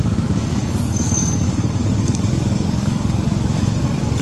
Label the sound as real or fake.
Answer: fake